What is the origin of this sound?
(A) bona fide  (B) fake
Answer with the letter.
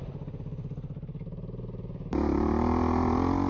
A